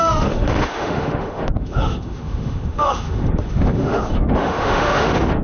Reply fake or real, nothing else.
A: fake